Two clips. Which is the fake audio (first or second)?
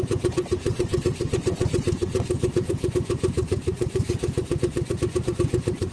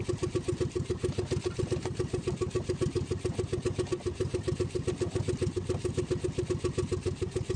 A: first